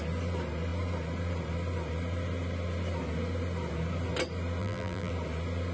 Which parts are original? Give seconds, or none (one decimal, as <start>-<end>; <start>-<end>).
0.0-4.6; 5.1-5.7